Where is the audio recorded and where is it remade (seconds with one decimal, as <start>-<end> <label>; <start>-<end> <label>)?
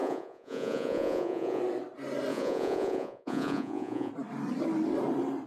0.0-1.6 remade; 1.6-2.3 recorded; 2.3-4.1 remade; 4.1-5.5 recorded